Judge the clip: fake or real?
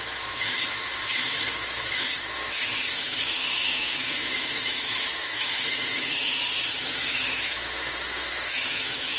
fake